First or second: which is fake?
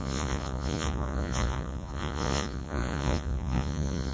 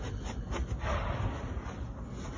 first